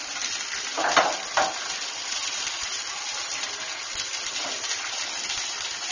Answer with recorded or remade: recorded